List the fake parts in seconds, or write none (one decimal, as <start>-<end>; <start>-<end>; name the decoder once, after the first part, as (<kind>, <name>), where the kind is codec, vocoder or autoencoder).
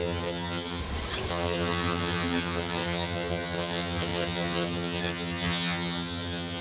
0.0-0.8 (vocoder, HiFi-GAN); 1.3-6.6